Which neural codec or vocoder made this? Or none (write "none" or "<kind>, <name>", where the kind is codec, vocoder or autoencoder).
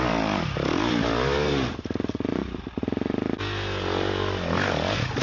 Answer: none